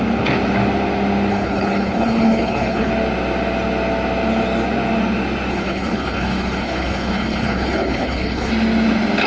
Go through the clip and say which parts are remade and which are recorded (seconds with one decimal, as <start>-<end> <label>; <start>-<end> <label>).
0.0-1.3 recorded; 1.3-2.9 remade; 2.9-5.5 recorded; 5.5-8.5 remade; 8.5-9.3 recorded